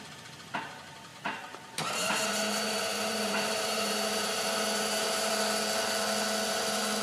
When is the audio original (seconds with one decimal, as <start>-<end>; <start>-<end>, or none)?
0.0-1.1; 5.3-7.0